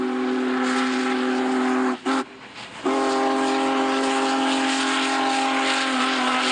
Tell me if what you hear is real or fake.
real